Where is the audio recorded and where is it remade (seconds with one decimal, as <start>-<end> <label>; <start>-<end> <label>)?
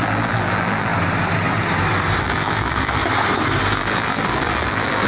0.0-0.9 remade; 0.9-2.2 recorded; 2.2-3.0 remade; 3.0-3.7 recorded; 3.7-5.1 remade